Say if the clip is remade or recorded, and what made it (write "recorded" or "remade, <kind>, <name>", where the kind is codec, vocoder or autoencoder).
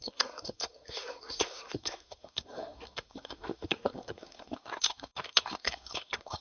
remade, codec, SNAC